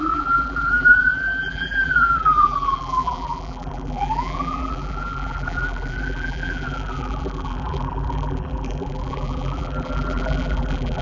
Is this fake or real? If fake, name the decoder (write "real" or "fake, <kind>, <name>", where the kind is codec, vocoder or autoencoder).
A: fake, vocoder, BigVGAN v2